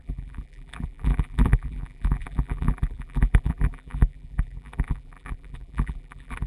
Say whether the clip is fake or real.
fake